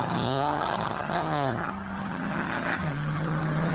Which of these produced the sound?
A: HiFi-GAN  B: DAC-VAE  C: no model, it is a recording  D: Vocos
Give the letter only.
A